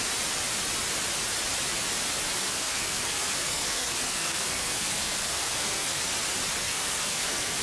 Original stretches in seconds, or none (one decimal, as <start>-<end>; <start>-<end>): 0.0-2.4; 6.0-6.6

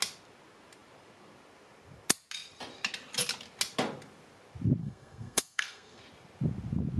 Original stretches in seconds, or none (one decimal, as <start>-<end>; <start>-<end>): 0.0-4.8; 6.0-7.0

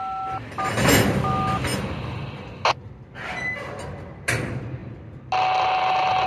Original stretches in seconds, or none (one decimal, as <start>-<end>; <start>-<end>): 0.0-6.3

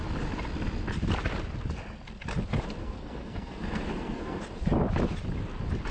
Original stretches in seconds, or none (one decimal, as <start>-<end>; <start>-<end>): 0.0-2.8; 4.4-5.9

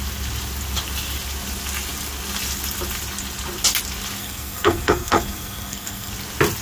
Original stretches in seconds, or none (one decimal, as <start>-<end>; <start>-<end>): 0.0-4.2; 6.1-6.6